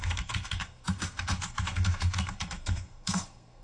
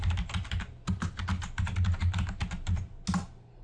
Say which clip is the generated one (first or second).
first